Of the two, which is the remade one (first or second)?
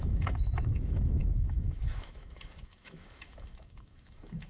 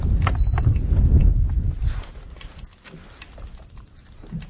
first